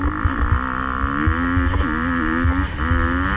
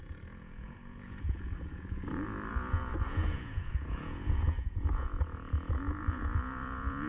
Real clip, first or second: first